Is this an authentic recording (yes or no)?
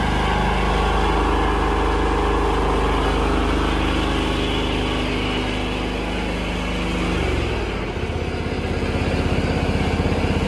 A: yes